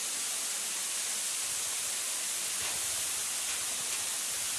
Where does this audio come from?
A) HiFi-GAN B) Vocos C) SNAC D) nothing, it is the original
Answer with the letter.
D